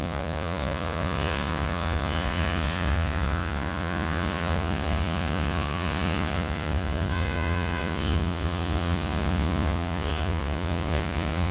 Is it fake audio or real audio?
fake